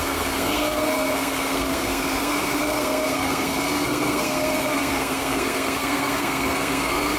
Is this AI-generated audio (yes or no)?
yes